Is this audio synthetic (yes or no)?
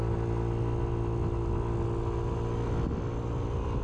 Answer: no